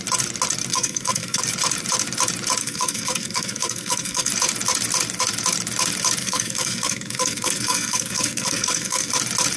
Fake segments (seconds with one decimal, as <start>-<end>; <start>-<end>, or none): 0.7-1.4; 2.6-4.3; 6.2-9.1